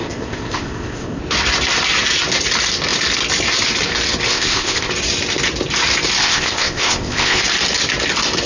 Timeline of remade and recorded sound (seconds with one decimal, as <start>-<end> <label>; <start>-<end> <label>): 0.0-1.2 remade; 1.2-4.3 recorded; 4.3-4.9 remade; 4.9-6.2 recorded; 6.2-7.4 remade; 7.4-8.5 recorded